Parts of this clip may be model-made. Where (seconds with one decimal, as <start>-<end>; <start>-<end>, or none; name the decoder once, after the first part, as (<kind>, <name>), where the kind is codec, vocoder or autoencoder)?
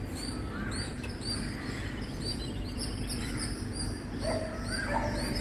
0.0-5.4 (vocoder, BigVGAN v2)